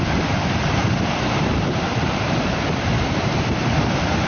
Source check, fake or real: fake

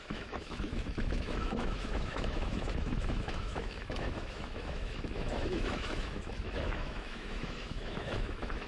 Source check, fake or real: fake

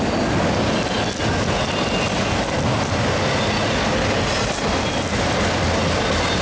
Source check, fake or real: real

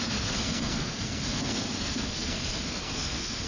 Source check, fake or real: fake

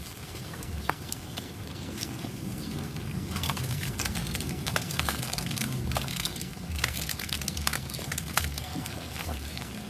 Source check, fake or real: fake